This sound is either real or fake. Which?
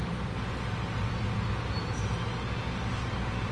real